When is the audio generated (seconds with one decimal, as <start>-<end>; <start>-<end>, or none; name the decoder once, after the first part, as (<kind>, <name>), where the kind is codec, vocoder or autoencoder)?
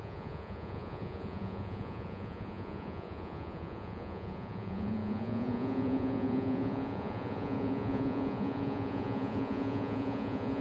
0.0-10.6 (vocoder, Vocos)